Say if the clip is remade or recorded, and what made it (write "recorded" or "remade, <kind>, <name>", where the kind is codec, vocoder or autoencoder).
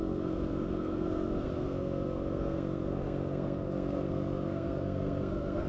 remade, codec, SNAC